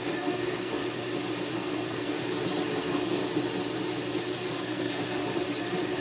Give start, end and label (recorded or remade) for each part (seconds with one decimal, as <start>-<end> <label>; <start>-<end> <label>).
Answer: 0.0-0.8 remade; 0.8-1.5 recorded; 1.5-2.2 remade; 2.2-2.8 recorded; 2.8-3.2 remade; 3.2-4.5 recorded; 4.5-5.2 remade; 5.2-6.0 recorded